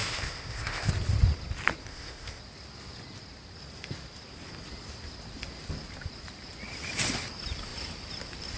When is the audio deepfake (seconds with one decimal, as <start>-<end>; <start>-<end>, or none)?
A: 0.0-0.9; 1.8-2.4